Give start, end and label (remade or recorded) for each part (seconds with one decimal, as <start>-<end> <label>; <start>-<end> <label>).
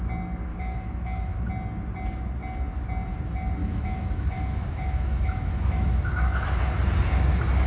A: 0.0-0.5 recorded; 0.5-1.5 remade; 1.5-3.6 recorded; 3.6-6.6 remade; 6.6-7.7 recorded